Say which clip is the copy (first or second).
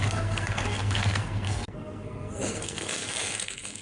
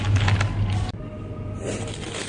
first